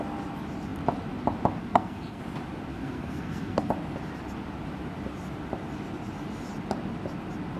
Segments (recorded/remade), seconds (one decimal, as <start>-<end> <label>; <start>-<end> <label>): 0.0-1.6 recorded; 1.6-2.2 remade; 2.2-2.7 recorded; 2.7-3.7 remade; 3.7-7.6 recorded